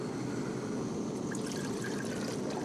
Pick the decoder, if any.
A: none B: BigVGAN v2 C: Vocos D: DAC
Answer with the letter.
A